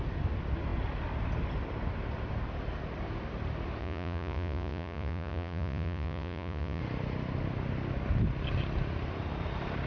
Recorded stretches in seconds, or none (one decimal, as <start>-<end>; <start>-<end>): 0.0-3.8; 6.8-9.9